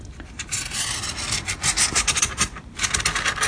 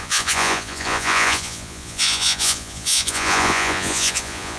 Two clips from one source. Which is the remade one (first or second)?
second